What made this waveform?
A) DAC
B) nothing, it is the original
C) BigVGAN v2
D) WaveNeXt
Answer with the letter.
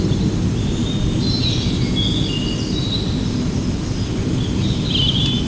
B